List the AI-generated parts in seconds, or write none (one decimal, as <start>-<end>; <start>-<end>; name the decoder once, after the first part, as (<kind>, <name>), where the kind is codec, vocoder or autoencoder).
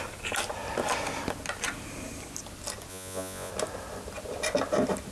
2.9-3.5 (vocoder, Vocos)